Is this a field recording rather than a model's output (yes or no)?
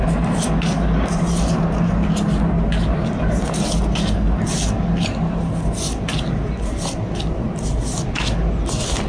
yes